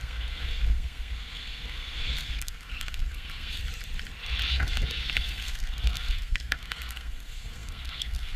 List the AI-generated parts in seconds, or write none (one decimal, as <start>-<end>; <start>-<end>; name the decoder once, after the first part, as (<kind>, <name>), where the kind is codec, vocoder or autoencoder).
0.0-3.6 (codec, SNAC); 4.5-8.4